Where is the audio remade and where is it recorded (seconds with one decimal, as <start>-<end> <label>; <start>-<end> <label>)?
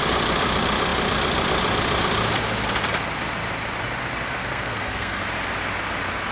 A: 0.0-4.4 recorded; 4.4-5.2 remade; 5.2-6.3 recorded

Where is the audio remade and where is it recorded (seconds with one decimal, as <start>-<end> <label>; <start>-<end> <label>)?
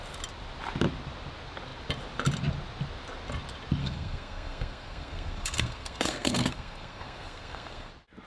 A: 0.0-3.8 recorded; 3.8-7.9 remade; 7.9-8.3 recorded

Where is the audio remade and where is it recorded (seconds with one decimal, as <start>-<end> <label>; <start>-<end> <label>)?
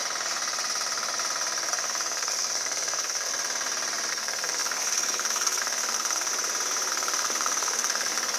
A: 0.0-1.7 recorded; 1.7-3.3 remade; 3.3-4.1 recorded; 4.1-6.3 remade; 6.3-6.9 recorded; 6.9-8.4 remade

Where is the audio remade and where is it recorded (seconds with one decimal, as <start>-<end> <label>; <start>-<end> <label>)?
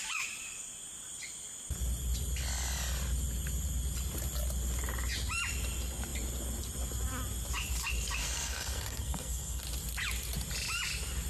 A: 0.0-8.2 recorded; 8.2-9.6 remade; 9.6-11.3 recorded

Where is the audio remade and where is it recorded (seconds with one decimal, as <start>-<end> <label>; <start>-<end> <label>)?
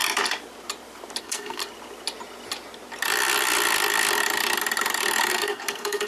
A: 0.0-1.2 recorded; 1.2-1.6 remade; 1.6-5.3 recorded; 5.3-6.1 remade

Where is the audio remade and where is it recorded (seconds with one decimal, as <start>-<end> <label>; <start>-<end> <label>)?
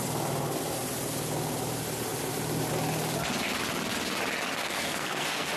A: 0.0-4.6 recorded; 4.6-5.6 remade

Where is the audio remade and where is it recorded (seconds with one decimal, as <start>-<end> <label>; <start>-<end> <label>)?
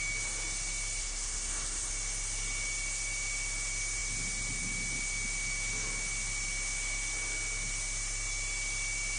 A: 0.0-1.0 recorded; 1.0-1.9 remade; 1.9-9.2 recorded